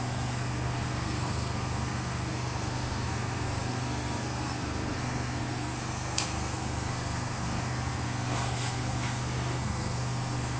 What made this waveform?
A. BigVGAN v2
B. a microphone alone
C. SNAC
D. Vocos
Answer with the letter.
C